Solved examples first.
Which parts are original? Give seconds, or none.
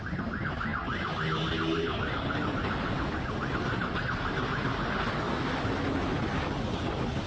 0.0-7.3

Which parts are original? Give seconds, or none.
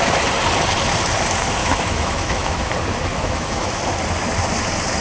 0.0-1.6; 2.7-3.1; 3.7-5.0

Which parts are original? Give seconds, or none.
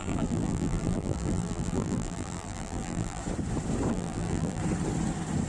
3.2-3.9; 4.6-5.5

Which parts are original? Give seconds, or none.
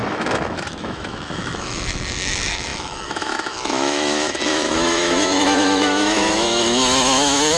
none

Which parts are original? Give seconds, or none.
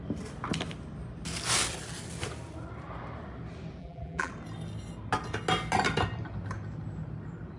0.0-3.8; 4.3-7.6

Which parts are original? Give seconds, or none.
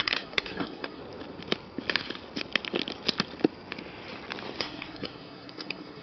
1.0-4.6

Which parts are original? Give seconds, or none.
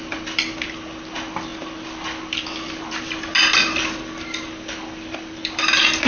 0.0-6.1